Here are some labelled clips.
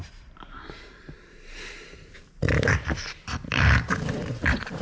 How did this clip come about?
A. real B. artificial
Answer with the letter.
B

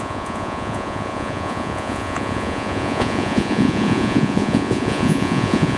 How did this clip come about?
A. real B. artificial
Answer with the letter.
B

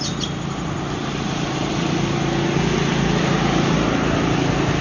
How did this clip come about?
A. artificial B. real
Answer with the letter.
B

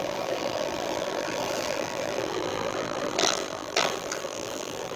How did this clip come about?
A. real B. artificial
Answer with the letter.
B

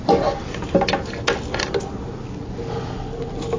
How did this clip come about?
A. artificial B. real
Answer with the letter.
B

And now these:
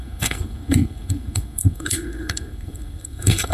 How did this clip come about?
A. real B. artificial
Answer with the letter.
B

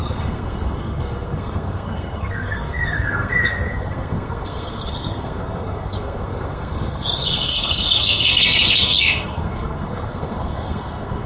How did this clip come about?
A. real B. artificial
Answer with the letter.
B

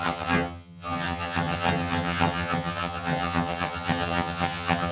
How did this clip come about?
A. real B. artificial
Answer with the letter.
B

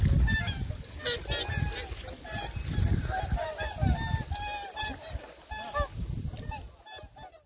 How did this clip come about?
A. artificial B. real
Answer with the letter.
B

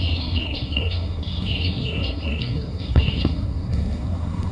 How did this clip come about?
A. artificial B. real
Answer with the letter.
A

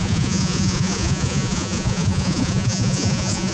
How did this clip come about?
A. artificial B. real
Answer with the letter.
A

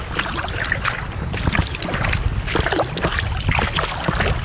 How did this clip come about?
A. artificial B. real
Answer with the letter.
B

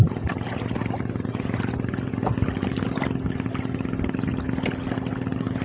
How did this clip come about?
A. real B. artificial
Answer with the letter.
A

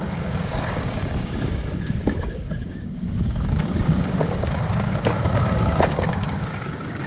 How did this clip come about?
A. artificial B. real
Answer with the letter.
A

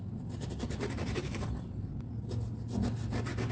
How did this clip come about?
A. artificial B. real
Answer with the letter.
B